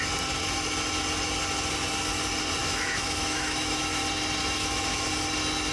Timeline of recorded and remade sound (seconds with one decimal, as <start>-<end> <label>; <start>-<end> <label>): 0.0-2.6 recorded; 2.6-4.0 remade; 4.0-4.4 recorded; 4.4-5.1 remade; 5.1-5.7 recorded